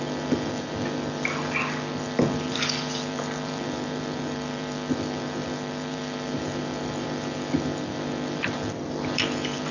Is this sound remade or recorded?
remade